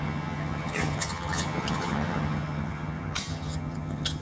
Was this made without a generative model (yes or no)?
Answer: no